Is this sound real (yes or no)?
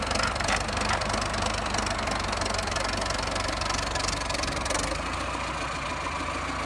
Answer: yes